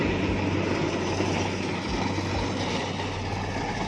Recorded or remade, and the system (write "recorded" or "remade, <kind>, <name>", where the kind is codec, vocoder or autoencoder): recorded